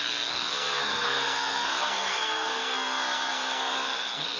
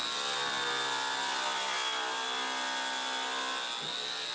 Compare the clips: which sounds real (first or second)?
second